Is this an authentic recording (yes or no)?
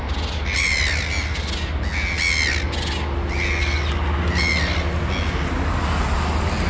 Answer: yes